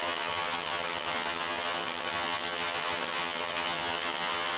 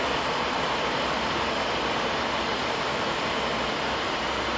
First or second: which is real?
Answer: second